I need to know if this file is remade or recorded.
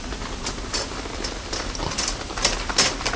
recorded